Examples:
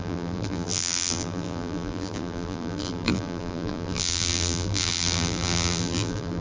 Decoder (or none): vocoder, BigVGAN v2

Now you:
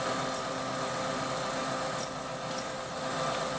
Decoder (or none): none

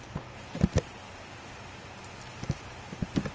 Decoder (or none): none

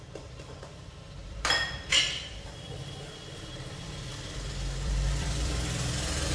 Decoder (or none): vocoder, BigVGAN v2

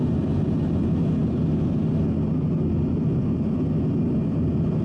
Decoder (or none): none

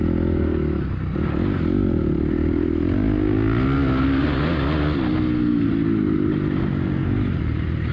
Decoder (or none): none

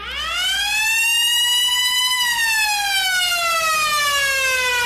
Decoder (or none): none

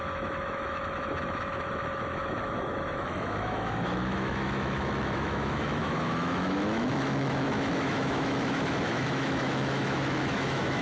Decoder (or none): autoencoder, DAC-VAE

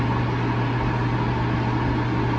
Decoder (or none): none